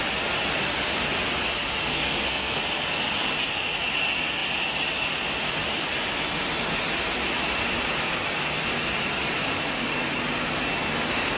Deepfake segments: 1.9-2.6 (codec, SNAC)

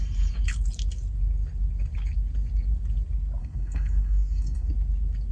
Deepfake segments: 3.4-4.7 (codec, SNAC)

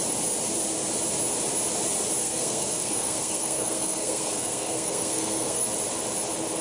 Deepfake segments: 2.2-5.6 (codec, SNAC)

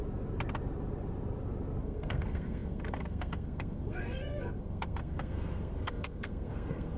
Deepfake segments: 1.8-7.0 (codec, SNAC)

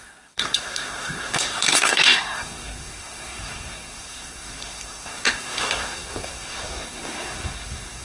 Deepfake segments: 0.0-8.0 (codec, SNAC)